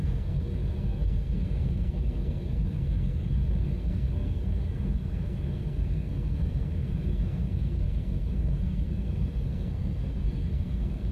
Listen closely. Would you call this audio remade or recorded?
remade